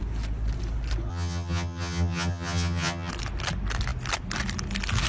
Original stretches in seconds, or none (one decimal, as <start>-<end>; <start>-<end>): 0.0-1.1; 3.1-5.1